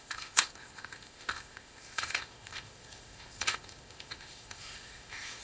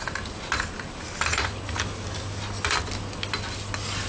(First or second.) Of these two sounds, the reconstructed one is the first